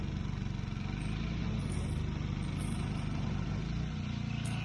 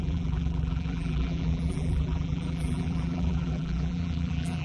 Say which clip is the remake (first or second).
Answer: second